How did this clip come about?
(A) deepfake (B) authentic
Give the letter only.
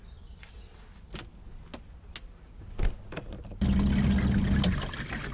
B